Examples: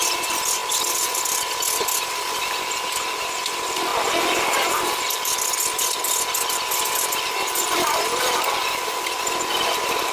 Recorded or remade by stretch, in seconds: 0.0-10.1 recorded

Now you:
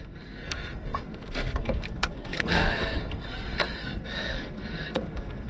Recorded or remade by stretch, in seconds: 0.0-5.5 remade